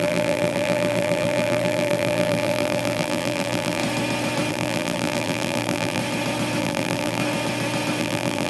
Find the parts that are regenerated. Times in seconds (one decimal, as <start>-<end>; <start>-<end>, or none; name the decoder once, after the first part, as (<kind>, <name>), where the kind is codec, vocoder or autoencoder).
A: 0.0-3.8 (vocoder, BigVGAN v2); 4.5-6.0; 6.6-7.2; 8.0-8.5